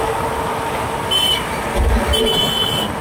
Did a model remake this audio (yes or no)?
no